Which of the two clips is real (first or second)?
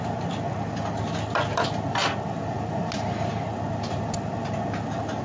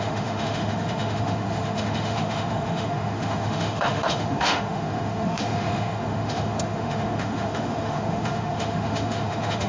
first